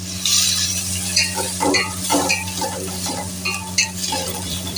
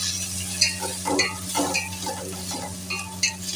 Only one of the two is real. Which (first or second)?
second